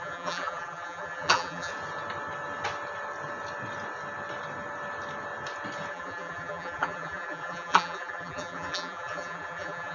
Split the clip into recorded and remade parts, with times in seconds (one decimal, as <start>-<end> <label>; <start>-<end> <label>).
0.0-1.7 remade; 1.7-5.9 recorded; 5.9-9.9 remade